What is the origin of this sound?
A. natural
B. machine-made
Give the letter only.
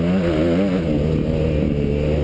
A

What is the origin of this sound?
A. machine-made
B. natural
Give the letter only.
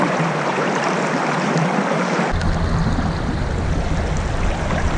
B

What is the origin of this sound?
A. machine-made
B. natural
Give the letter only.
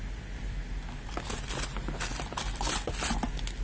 B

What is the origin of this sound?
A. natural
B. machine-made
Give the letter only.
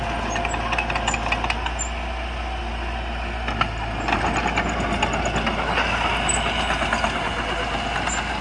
A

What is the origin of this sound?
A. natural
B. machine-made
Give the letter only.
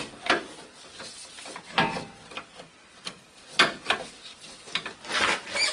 A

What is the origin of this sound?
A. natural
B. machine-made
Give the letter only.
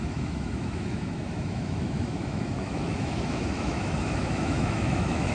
B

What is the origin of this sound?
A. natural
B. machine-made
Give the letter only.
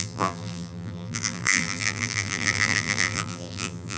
B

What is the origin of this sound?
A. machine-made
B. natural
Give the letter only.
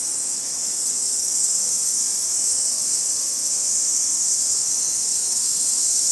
A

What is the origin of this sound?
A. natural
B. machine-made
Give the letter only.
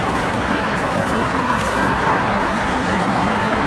B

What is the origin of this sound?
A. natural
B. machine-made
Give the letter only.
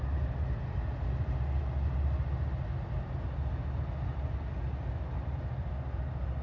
A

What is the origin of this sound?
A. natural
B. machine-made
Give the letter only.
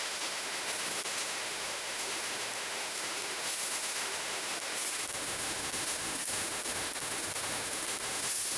B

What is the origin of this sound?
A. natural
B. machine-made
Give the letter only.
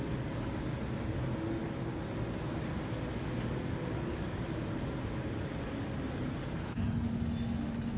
A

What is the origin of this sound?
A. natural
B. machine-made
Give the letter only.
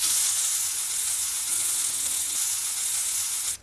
B